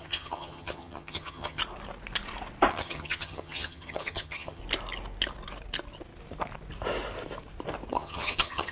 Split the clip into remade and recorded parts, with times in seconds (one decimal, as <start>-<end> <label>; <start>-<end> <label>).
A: 0.0-1.6 remade; 1.6-2.7 recorded; 2.7-4.6 remade; 4.6-7.9 recorded; 7.9-8.7 remade